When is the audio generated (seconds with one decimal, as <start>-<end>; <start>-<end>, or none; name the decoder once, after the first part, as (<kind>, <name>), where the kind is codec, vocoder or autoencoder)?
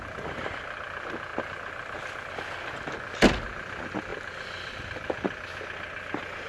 none